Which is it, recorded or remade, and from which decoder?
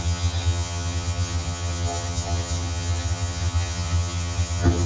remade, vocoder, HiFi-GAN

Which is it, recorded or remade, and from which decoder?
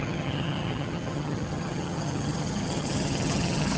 remade, vocoder, HiFi-GAN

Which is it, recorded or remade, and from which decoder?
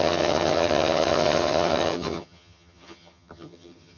remade, vocoder, HiFi-GAN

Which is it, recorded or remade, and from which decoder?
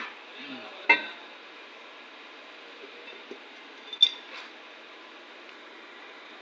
recorded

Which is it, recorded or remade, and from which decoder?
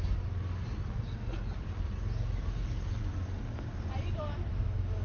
recorded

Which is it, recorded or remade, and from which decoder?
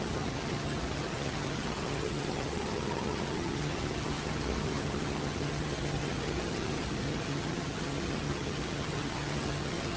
remade, vocoder, HiFi-GAN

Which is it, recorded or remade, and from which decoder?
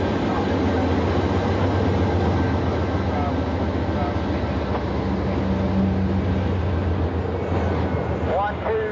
recorded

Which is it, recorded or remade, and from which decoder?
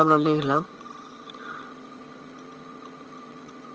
remade, vocoder, HiFi-GAN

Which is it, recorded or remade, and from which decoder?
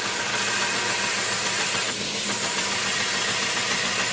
recorded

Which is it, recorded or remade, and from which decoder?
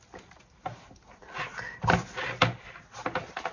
recorded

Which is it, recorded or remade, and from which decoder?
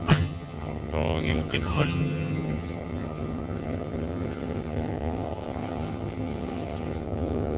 remade, vocoder, HiFi-GAN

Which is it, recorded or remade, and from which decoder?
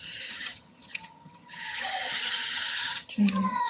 remade, vocoder, HiFi-GAN